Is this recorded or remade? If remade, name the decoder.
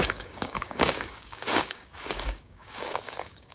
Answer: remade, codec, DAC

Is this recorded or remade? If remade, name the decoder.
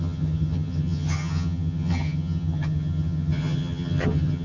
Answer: remade, vocoder, HiFi-GAN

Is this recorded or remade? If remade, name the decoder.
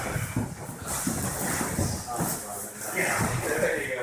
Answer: recorded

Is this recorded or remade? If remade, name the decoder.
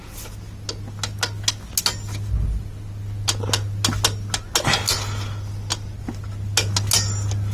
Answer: recorded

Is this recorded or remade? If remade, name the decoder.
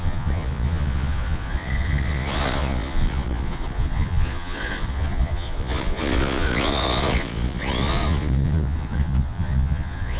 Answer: remade, vocoder, Vocos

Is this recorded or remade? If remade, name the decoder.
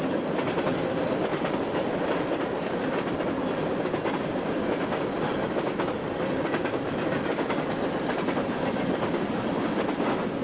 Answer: remade, vocoder, BigVGAN v2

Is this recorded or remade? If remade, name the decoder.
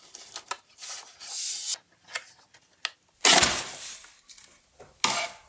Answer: recorded